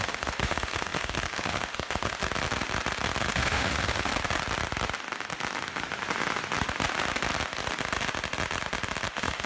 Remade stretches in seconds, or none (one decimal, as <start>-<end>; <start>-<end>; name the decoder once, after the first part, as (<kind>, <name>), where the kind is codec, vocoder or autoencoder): 0.0-2.2 (autoencoder, DAC-VAE); 3.3-4.1; 9.1-9.5